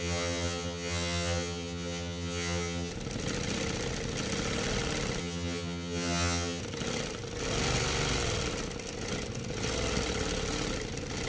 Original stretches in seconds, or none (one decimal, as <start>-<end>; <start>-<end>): 2.9-5.2; 6.6-11.3